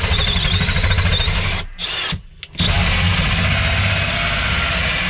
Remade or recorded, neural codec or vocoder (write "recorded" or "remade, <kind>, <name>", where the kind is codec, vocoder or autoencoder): recorded